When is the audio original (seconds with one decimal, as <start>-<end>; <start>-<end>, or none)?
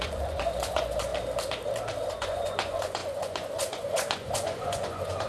1.1-2.1